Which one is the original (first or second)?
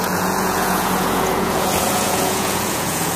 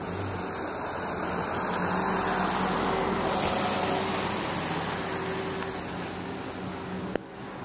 second